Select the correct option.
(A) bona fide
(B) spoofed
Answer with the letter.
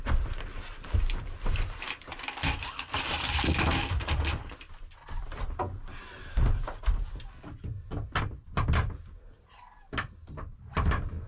A